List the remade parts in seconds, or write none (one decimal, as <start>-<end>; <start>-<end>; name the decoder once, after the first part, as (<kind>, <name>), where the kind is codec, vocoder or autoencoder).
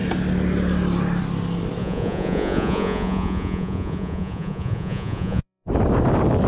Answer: 1.8-5.7 (vocoder, Vocos)